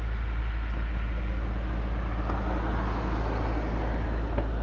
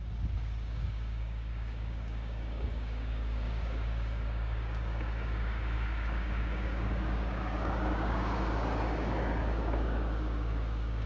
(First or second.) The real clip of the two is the first